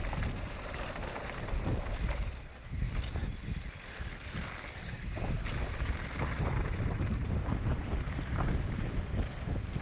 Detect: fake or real real